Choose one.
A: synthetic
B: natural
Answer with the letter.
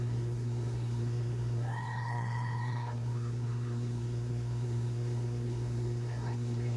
A